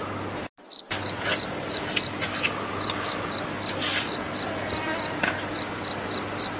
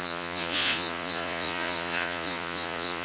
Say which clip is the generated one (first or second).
second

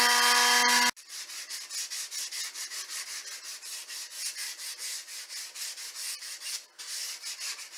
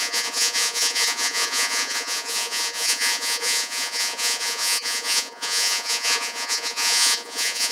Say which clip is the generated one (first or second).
second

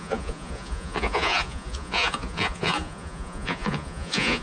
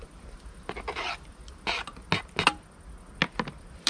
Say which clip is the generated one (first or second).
first